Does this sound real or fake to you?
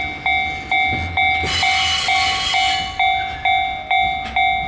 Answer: real